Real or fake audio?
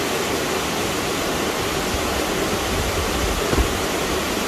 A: real